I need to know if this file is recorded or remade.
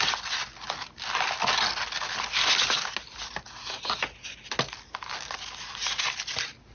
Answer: recorded